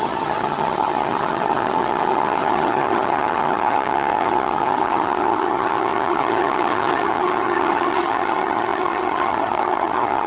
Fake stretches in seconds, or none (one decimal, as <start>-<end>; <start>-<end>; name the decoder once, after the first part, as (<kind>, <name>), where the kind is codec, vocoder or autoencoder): 0.0-10.3 (vocoder, HiFi-GAN)